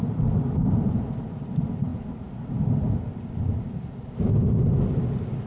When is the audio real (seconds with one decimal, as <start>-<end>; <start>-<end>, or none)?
0.0-5.5